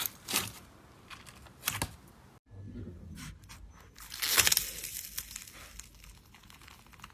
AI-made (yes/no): no